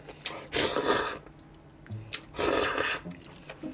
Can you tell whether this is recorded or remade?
recorded